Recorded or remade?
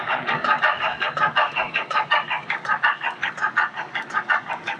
remade